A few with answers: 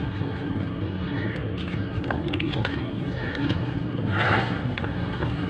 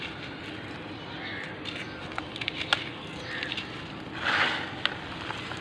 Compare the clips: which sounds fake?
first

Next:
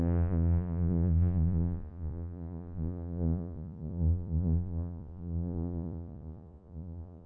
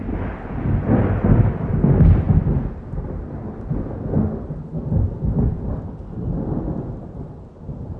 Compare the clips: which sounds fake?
first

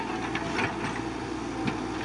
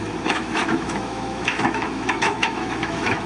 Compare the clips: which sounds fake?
second